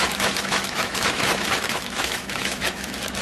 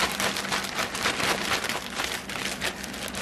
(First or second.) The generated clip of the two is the first